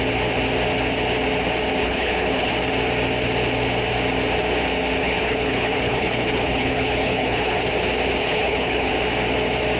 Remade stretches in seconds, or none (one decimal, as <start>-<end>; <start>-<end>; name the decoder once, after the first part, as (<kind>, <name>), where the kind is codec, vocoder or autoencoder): 1.8-2.5 (codec, HILCodec); 5.0-7.7; 8.2-8.9